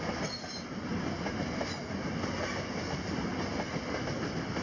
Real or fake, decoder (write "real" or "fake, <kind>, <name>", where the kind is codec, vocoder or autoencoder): real